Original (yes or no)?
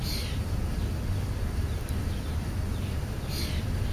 yes